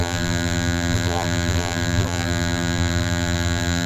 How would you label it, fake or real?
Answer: fake